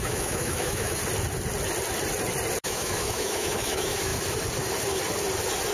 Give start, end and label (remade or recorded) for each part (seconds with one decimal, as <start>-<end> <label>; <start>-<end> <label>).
0.0-1.0 remade; 1.0-2.6 recorded; 2.6-4.1 remade; 4.1-5.7 recorded